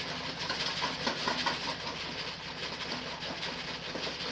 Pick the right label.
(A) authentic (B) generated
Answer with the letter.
A